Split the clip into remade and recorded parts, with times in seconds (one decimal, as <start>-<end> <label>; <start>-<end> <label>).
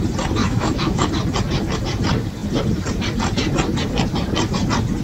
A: 0.0-0.4 recorded; 0.4-1.1 remade; 1.1-5.0 recorded